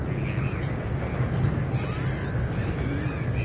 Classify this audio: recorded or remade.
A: recorded